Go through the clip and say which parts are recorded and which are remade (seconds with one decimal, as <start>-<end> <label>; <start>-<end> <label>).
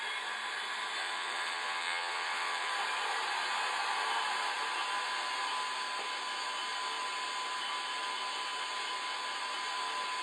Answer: 0.0-1.0 recorded; 1.0-2.7 remade; 2.7-10.2 recorded